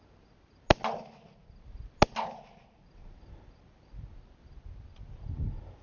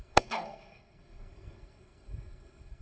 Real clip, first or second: first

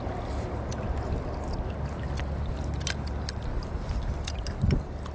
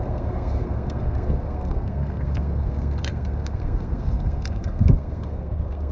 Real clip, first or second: first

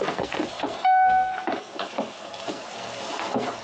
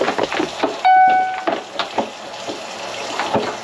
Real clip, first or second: second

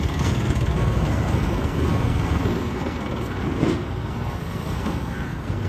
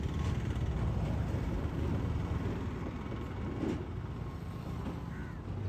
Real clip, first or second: second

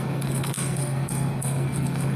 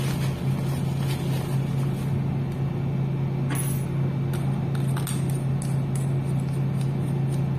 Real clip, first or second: second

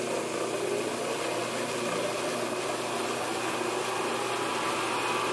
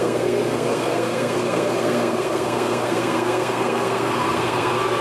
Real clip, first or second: first